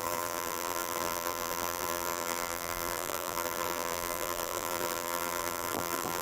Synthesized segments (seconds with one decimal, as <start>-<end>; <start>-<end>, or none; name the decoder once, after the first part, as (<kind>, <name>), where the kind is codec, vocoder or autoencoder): 0.0-6.2 (vocoder, BigVGAN v2)